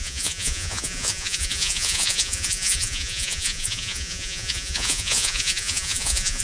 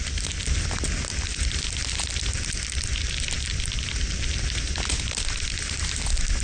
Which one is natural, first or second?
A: second